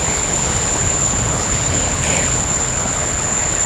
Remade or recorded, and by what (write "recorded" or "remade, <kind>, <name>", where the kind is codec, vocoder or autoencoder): remade, codec, HILCodec